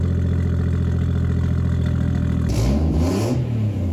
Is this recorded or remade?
recorded